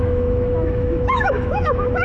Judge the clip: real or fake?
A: fake